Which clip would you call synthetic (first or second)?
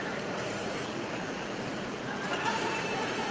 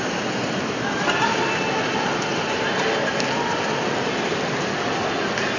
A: first